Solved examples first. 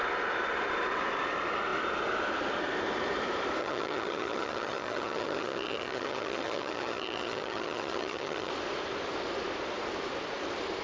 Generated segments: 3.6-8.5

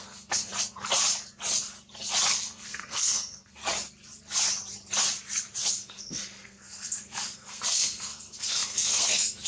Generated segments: 0.0-0.5; 2.3-3.6; 5.7-9.5

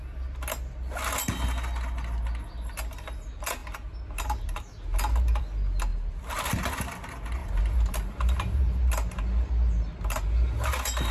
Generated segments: 7.4-8.9

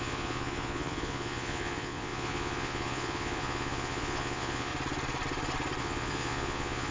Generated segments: 0.0-4.7; 5.8-6.9

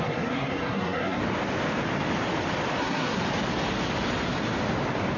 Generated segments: 0.0-1.2; 2.8-3.2

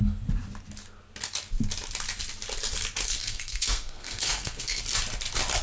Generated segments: 3.2-4.8

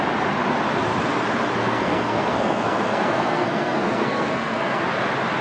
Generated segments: 1.6-4.8

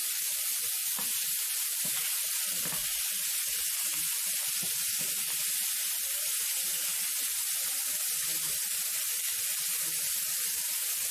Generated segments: 0.0-4.7